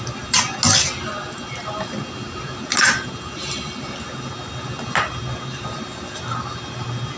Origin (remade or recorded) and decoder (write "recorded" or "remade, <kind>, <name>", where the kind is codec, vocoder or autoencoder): recorded